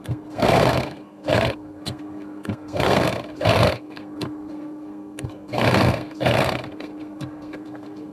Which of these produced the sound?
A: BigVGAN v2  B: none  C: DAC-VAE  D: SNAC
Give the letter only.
D